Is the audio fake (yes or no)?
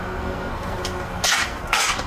yes